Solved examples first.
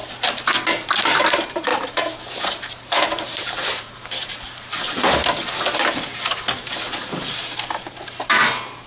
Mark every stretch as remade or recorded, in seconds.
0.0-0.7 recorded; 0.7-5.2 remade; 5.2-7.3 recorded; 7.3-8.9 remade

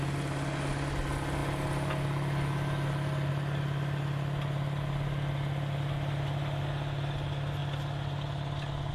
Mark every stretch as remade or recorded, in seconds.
0.0-8.9 recorded